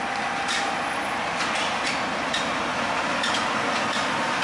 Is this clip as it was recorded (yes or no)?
yes